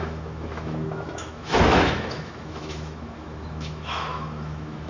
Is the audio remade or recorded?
remade